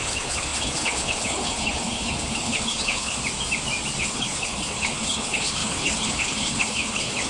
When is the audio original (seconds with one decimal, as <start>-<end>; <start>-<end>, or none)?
3.2-4.0